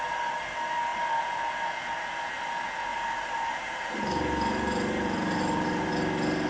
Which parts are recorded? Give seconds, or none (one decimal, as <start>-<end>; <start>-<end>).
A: 0.0-2.9; 5.9-6.5

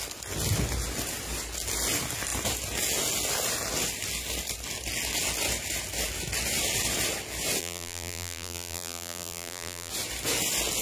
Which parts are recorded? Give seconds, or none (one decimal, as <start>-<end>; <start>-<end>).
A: 0.0-7.6; 9.9-10.8

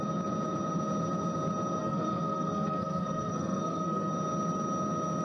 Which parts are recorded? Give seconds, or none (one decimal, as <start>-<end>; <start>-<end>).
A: 0.0-1.8; 4.1-5.2

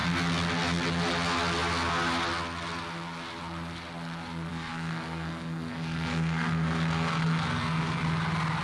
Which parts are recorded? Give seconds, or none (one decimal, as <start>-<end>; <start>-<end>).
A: 0.0-4.5; 8.0-8.6

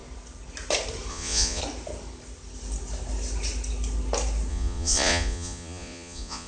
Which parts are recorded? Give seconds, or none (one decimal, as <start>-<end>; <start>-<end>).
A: 0.0-1.1; 1.6-4.5

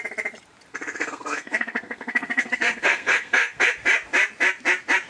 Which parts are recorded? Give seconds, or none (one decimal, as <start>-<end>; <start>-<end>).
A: 0.0-0.7; 3.7-5.1

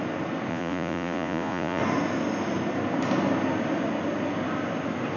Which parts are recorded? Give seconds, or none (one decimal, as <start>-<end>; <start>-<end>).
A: 0.0-0.5; 1.8-5.2